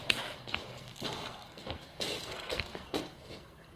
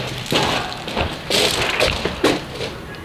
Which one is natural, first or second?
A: second